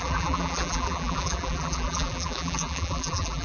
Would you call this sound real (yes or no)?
no